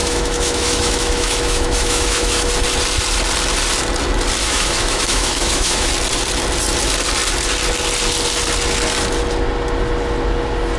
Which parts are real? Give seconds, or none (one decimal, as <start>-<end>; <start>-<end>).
2.5-4.4; 5.9-10.8